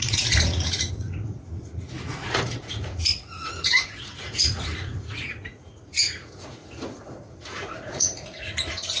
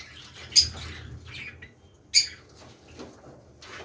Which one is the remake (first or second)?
first